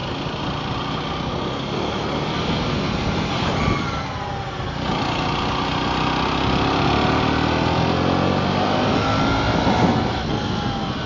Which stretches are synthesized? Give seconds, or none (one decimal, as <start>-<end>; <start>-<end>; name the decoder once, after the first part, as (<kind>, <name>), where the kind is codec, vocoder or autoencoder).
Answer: none